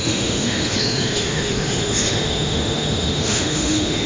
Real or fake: fake